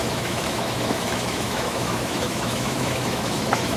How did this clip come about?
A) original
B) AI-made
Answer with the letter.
B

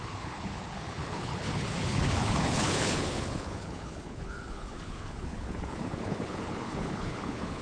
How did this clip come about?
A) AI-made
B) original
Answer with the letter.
A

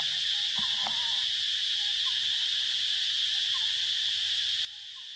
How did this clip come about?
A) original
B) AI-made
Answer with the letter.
A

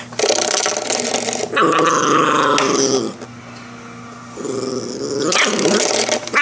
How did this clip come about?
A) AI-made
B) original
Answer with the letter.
B